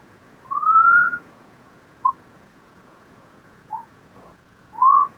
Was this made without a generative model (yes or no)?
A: no